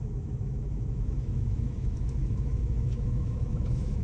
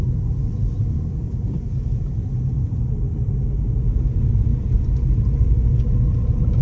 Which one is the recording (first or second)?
second